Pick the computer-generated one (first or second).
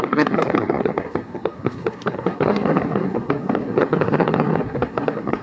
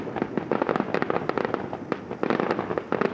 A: first